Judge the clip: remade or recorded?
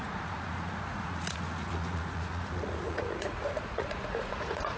remade